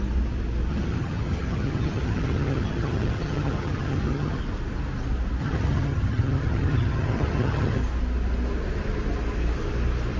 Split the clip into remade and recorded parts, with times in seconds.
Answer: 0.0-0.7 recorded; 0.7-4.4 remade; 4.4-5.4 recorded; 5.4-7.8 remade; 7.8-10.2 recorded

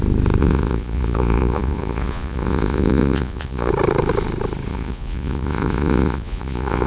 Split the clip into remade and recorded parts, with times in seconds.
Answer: 0.0-0.4 recorded; 0.4-3.7 remade; 3.7-4.7 recorded; 4.7-6.9 remade

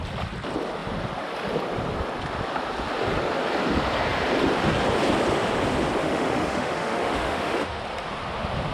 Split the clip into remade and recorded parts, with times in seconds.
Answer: 0.0-6.0 recorded; 6.0-7.8 remade; 7.8-8.7 recorded

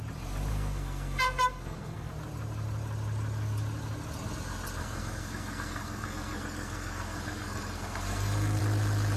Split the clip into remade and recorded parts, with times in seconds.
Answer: 0.0-0.5 recorded; 0.5-2.1 remade; 2.1-4.8 recorded; 4.8-8.6 remade; 8.6-9.2 recorded

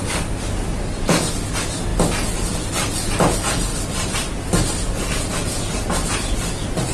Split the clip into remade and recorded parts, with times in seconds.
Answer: 0.0-6.9 recorded